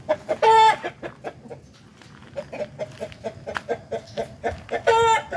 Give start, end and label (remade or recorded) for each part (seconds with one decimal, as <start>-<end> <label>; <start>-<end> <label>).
0.0-5.4 recorded